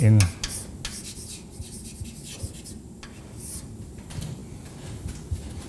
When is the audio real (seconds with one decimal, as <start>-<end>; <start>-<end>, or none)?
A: 0.0-5.7